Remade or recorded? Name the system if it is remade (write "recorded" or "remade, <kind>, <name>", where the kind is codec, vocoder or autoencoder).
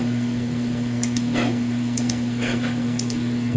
remade, codec, SNAC